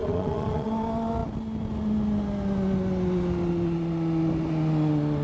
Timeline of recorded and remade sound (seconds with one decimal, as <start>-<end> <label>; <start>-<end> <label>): 0.0-0.7 remade; 0.7-5.2 recorded